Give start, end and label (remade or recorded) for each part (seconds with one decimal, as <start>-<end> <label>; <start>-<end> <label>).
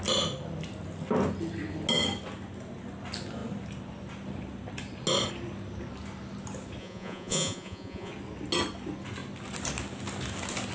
0.0-6.8 recorded; 6.8-8.1 remade; 8.1-10.7 recorded